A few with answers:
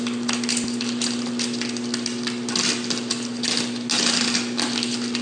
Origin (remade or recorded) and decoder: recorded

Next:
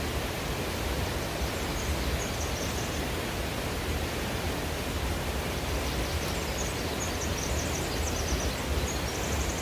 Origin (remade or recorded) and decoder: recorded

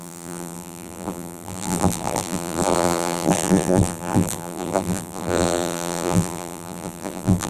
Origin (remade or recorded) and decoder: remade, vocoder, BigVGAN v2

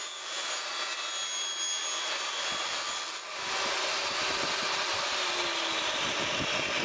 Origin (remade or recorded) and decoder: recorded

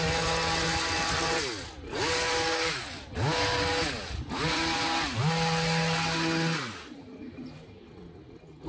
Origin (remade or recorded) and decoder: recorded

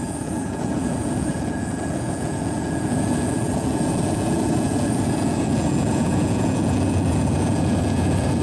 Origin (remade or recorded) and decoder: remade, vocoder, Vocos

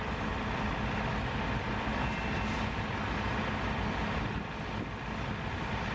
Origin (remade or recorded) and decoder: recorded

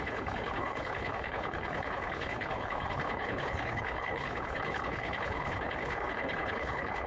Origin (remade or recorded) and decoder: remade, codec, HILCodec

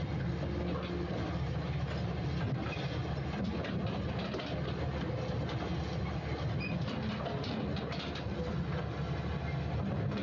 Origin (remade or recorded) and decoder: recorded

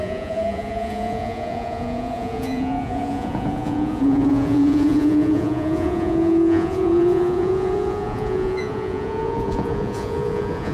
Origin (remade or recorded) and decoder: remade, vocoder, Vocos